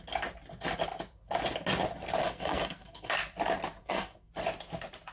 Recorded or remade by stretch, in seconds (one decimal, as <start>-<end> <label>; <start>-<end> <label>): 0.0-2.2 recorded; 2.2-3.1 remade; 3.1-3.8 recorded; 3.8-4.3 remade; 4.3-5.1 recorded